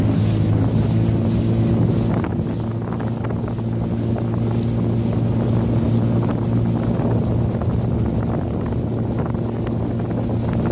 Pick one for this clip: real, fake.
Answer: real